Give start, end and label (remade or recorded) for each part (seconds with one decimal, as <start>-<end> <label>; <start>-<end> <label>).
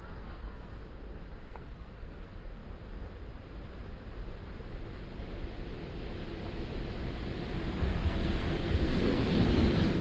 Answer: 0.0-0.7 remade; 0.7-1.4 recorded; 1.4-2.6 remade; 2.6-7.7 recorded; 7.7-10.0 remade